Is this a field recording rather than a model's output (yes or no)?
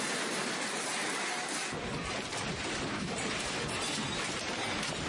yes